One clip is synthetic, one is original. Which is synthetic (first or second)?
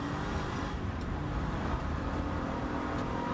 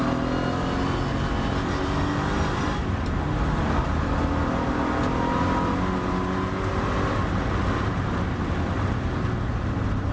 first